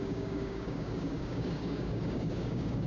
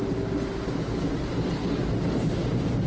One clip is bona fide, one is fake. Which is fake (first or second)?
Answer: first